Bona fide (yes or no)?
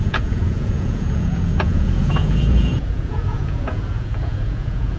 no